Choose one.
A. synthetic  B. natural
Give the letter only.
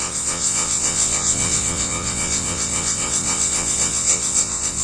A